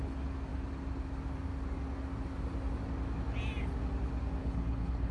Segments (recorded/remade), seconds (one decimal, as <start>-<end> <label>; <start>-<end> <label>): 0.0-4.4 recorded; 4.4-5.1 remade